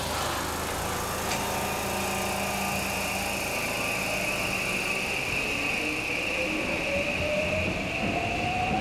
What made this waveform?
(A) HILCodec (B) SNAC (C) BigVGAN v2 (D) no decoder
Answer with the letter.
D